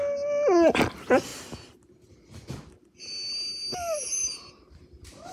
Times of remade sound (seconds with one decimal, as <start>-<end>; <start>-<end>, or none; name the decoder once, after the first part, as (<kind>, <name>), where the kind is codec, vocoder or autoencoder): none